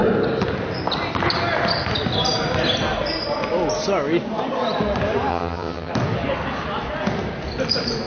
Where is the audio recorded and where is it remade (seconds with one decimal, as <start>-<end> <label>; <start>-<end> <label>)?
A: 0.0-5.3 recorded; 5.3-5.9 remade; 5.9-8.1 recorded

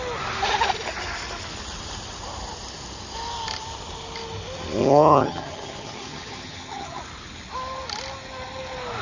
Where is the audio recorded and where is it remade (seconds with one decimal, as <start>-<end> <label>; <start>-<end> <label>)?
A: 0.0-4.8 recorded; 4.8-7.0 remade; 7.0-9.0 recorded

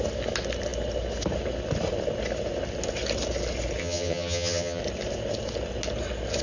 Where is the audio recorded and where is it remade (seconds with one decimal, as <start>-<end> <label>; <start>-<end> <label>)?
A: 0.0-3.8 recorded; 3.8-4.8 remade; 4.8-6.4 recorded

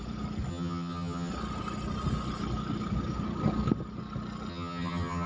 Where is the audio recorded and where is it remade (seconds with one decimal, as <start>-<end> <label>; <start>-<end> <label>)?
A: 0.0-0.5 recorded; 0.5-1.3 remade; 1.3-4.5 recorded; 4.5-5.3 remade

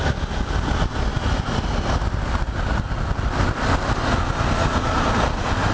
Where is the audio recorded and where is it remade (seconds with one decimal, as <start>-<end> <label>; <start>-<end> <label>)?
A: 0.0-5.7 recorded

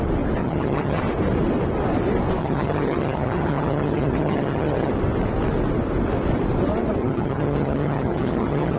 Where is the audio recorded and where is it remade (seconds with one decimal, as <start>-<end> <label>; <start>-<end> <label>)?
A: 0.0-0.4 recorded; 0.4-1.0 remade; 1.0-2.4 recorded; 2.4-4.9 remade; 4.9-7.0 recorded; 7.0-8.8 remade

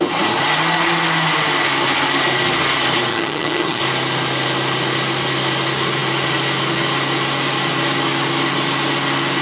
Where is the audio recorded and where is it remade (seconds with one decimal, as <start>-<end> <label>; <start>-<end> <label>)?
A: 0.0-3.1 recorded; 3.1-3.8 remade; 3.8-9.4 recorded

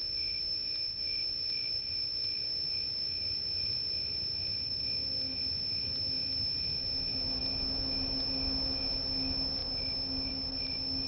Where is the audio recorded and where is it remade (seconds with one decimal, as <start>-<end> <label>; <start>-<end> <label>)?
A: 0.0-11.1 recorded